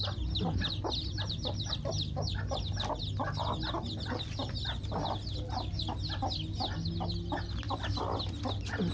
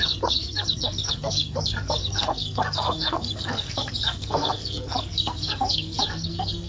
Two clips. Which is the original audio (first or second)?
first